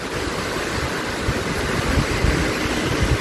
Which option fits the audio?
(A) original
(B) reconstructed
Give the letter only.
A